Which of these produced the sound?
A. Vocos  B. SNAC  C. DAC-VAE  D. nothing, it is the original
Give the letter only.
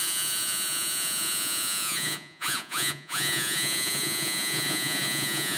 A